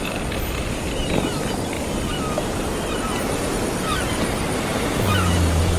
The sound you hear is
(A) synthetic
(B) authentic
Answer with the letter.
B